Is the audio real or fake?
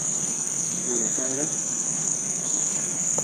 fake